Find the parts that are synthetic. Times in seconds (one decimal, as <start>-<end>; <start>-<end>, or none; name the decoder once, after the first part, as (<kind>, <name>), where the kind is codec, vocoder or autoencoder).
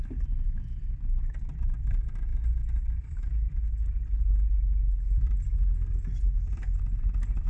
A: none